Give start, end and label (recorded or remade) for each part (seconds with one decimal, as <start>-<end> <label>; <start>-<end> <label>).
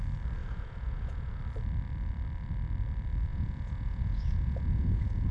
0.0-0.4 recorded; 0.4-1.4 remade; 1.4-3.3 recorded; 3.3-5.3 remade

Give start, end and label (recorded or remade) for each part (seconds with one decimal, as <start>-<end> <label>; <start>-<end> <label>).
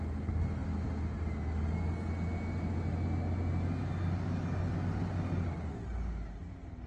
0.0-6.9 recorded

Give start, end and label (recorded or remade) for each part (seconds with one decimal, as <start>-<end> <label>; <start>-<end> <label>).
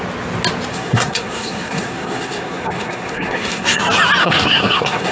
0.0-0.7 recorded; 0.7-3.8 remade; 3.8-4.2 recorded; 4.2-5.1 remade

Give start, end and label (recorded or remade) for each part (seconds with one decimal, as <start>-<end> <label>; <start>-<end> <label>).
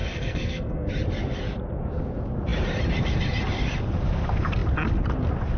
0.0-0.9 remade; 0.9-5.6 recorded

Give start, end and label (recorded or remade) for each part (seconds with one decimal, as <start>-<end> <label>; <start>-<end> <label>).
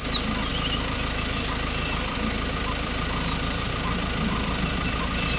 0.0-0.5 recorded; 0.5-3.7 remade; 3.7-5.4 recorded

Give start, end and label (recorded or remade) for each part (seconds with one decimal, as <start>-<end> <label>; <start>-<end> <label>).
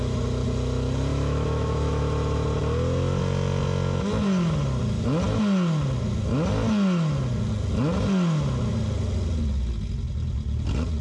0.0-1.1 recorded; 1.1-2.0 remade; 2.0-11.0 recorded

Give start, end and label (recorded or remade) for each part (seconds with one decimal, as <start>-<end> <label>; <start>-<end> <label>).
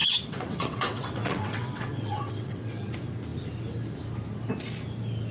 0.0-2.9 remade; 2.9-5.3 recorded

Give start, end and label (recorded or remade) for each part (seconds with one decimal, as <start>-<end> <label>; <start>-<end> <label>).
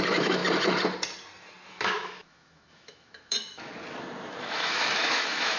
0.0-0.4 remade; 0.4-1.7 recorded; 1.7-3.7 remade; 3.7-4.3 recorded; 4.3-5.6 remade